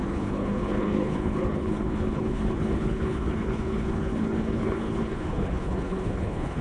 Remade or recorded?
remade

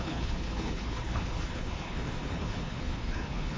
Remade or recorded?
remade